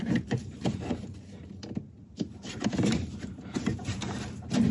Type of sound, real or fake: fake